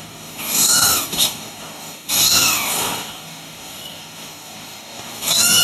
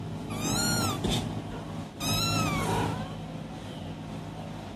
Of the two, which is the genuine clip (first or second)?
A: second